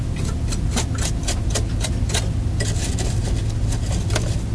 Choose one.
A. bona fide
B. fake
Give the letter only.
A